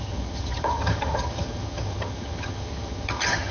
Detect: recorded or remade remade